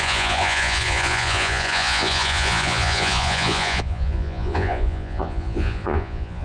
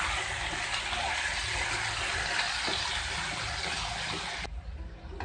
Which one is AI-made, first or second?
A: first